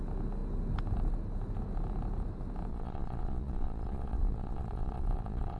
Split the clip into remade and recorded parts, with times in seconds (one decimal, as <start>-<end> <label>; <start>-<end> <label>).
0.0-2.7 recorded; 2.7-5.6 remade